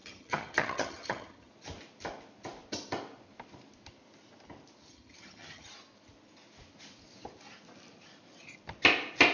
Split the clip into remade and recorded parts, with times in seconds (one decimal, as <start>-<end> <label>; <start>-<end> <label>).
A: 0.0-1.5 remade; 1.5-4.9 recorded; 4.9-5.7 remade; 5.7-9.3 recorded